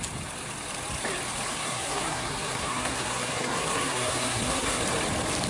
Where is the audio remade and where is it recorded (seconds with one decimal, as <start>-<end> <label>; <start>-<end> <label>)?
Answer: 0.0-1.5 recorded; 1.5-4.8 remade; 4.8-5.5 recorded